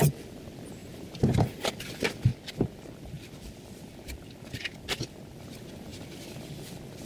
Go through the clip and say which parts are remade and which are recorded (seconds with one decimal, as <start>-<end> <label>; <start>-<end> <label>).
0.0-0.8 recorded; 0.8-1.7 remade; 1.7-5.9 recorded; 5.9-6.5 remade; 6.5-7.1 recorded